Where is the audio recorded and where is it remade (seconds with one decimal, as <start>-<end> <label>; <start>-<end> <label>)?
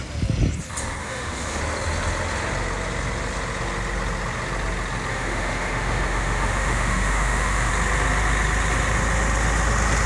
0.0-1.0 recorded; 1.0-1.6 remade; 1.6-5.1 recorded; 5.1-7.7 remade; 7.7-10.1 recorded